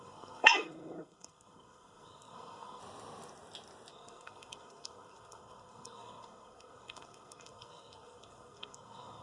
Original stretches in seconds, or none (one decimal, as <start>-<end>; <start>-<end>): 2.8-3.9